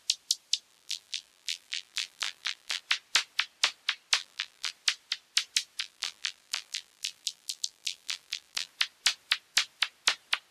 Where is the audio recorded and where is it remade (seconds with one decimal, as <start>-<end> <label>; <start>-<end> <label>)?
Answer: 0.0-0.7 recorded; 0.7-2.8 remade; 2.8-4.2 recorded; 4.2-4.7 remade; 4.7-5.8 recorded; 5.8-8.7 remade; 8.7-10.5 recorded